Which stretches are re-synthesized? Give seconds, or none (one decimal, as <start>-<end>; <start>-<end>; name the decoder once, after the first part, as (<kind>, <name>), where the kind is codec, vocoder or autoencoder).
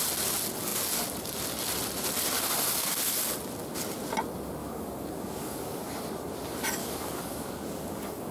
4.6-5.9 (codec, DAC); 6.8-8.3